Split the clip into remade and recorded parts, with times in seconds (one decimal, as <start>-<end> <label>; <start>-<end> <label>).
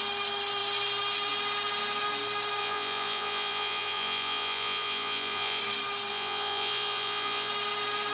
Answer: 0.0-2.6 recorded; 2.6-5.6 remade; 5.6-6.1 recorded; 6.1-7.5 remade; 7.5-8.1 recorded